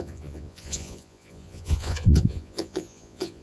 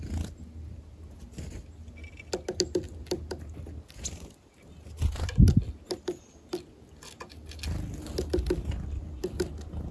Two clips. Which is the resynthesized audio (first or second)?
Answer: first